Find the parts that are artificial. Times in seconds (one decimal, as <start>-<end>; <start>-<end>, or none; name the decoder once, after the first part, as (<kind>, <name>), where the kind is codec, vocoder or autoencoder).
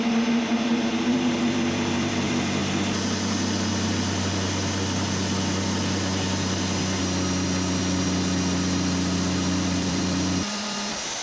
0.0-2.6 (vocoder, BigVGAN v2); 7.8-11.2